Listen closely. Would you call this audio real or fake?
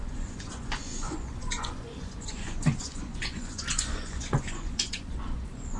fake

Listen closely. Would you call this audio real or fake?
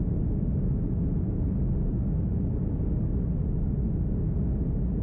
real